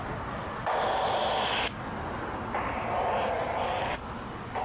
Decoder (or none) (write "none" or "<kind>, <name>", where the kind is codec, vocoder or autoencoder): none